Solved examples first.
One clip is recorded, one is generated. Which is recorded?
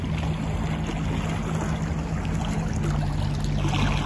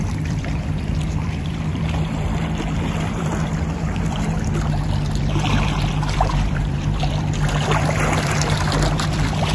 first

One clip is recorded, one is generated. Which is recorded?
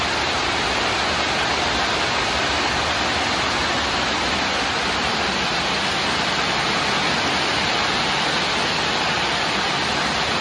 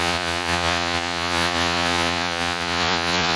first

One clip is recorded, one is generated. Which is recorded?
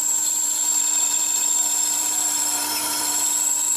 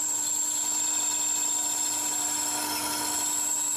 second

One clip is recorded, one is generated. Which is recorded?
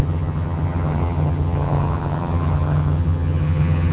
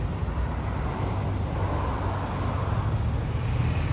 second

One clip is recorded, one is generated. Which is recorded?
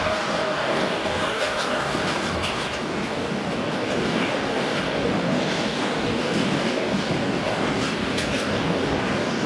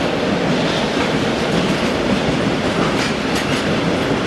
second